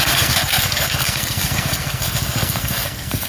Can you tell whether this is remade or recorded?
remade